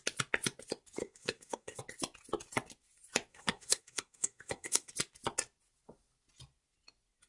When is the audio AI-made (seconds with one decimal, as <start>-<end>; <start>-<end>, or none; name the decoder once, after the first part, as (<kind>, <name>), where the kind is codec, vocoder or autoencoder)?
1.0-1.8 (codec, SNAC); 3.3-4.9